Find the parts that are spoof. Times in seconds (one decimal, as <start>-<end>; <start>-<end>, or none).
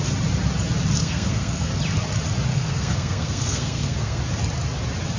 1.0-1.7; 2.5-4.2